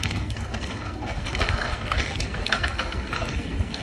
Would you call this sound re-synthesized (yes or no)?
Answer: yes